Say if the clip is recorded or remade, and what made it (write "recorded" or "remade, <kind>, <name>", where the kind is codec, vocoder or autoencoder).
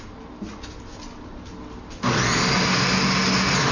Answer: recorded